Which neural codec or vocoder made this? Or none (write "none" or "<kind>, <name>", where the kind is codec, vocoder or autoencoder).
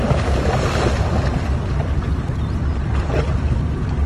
none